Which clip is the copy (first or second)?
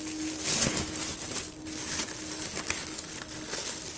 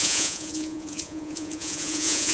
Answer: second